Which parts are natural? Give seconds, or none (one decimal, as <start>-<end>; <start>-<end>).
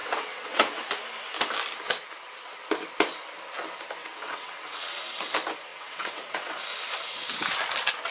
0.8-4.0; 4.9-5.7; 6.5-8.1